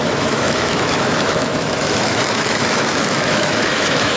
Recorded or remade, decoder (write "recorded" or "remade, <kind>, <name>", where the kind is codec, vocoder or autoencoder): remade, autoencoder, DAC-VAE